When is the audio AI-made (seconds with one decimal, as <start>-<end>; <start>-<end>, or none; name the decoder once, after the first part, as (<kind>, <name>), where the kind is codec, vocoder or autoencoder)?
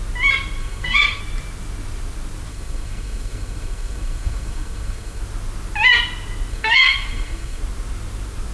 0.6-1.2 (codec, SNAC); 2.5-5.2; 6.5-7.6